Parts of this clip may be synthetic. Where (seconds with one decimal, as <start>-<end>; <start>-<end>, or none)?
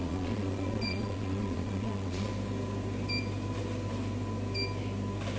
0.0-2.3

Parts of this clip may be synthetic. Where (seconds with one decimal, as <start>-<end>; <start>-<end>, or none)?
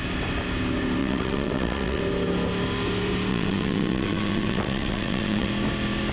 1.0-2.0; 3.3-5.5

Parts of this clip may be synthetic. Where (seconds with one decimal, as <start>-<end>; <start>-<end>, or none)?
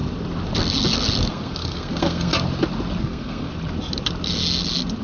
1.3-2.3; 3.0-3.5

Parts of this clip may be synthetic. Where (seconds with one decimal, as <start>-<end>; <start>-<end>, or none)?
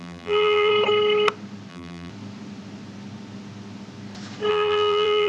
0.0-0.7; 1.7-2.1; 4.5-5.3